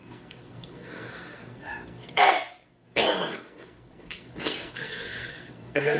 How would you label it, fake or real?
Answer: fake